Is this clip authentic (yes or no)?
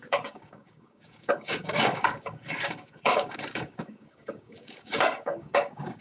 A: no